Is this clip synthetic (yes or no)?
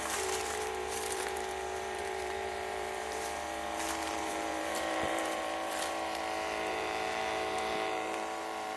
yes